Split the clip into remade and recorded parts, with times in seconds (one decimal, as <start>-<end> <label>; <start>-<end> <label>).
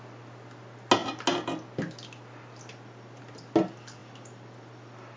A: 0.0-4.0 recorded; 4.0-5.2 remade